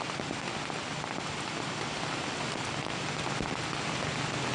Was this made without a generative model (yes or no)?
yes